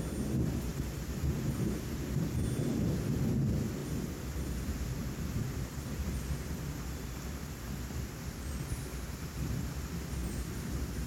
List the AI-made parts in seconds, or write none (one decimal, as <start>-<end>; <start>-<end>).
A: none